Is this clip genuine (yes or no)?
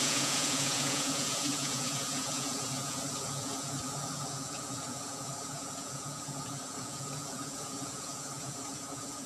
no